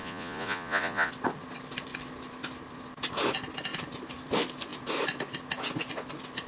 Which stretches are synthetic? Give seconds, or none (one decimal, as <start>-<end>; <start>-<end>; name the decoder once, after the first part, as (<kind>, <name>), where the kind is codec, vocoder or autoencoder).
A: 0.0-1.1 (vocoder, Vocos)

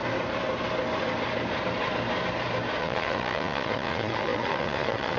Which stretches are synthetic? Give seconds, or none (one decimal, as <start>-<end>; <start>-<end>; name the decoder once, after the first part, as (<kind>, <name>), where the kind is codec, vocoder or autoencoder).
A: 2.8-5.2 (vocoder, Vocos)

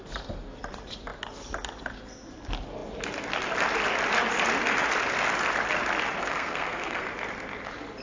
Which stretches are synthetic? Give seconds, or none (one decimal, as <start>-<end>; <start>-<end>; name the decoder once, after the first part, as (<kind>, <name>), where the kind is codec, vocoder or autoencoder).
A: 6.2-7.1 (codec, SNAC)

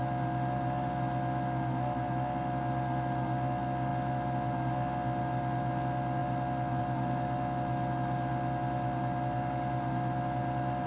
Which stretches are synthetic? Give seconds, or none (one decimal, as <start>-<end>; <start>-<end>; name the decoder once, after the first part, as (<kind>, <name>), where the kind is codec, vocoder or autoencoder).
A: none